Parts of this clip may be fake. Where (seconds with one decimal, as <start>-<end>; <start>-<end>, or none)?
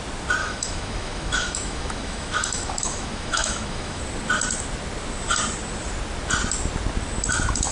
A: 0.4-4.0